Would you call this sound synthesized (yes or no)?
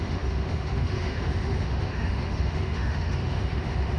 yes